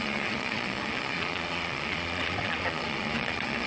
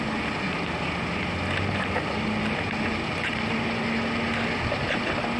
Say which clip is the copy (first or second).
first